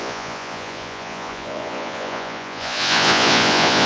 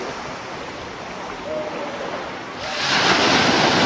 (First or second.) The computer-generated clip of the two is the first